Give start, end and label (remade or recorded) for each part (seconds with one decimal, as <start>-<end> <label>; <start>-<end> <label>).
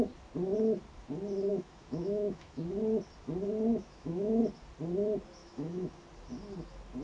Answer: 0.0-1.5 recorded; 1.5-2.6 remade; 2.6-3.7 recorded; 3.7-4.4 remade; 4.4-5.4 recorded; 5.4-6.0 remade; 6.0-7.0 recorded